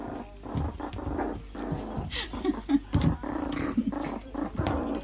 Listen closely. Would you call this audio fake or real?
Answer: fake